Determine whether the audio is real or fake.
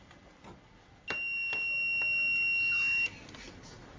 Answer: real